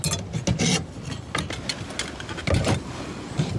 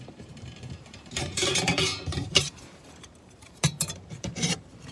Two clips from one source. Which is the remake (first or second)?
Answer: second